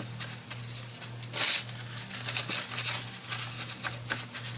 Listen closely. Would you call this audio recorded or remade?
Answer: recorded